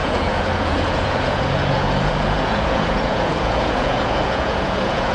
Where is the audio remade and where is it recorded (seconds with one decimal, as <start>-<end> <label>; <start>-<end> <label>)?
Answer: 0.0-5.1 remade